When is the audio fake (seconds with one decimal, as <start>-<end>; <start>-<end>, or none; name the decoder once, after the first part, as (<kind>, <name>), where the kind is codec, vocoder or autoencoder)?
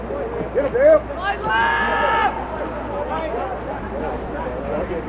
none